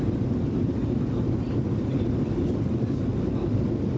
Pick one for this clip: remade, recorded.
recorded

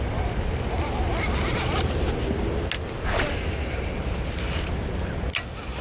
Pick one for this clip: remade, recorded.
recorded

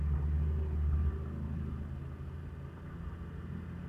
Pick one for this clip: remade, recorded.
recorded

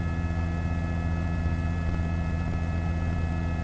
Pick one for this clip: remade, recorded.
recorded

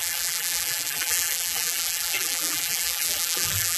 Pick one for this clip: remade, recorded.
remade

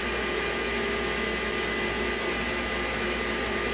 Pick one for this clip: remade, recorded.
recorded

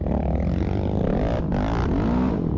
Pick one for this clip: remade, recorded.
recorded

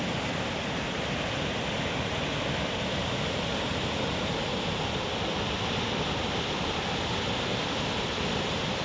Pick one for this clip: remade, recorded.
recorded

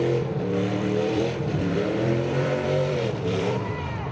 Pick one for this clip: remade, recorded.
remade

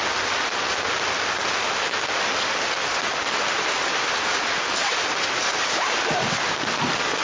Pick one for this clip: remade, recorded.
recorded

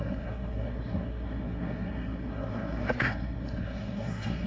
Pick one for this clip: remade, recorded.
remade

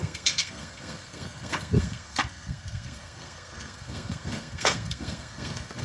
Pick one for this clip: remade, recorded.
remade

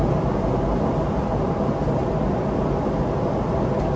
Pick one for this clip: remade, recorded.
recorded